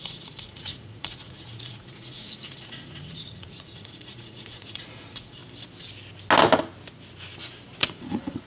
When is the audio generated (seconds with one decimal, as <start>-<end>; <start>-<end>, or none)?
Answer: 0.0-5.4; 7.8-8.5